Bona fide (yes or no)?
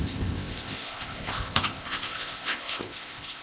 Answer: no